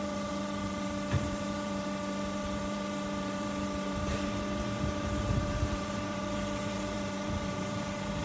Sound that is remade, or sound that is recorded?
remade